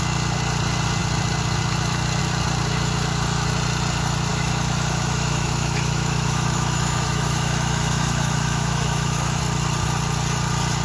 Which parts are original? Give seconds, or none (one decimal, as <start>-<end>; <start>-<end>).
0.0-4.3; 9.4-10.8